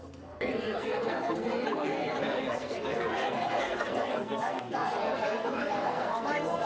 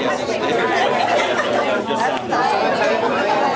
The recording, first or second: second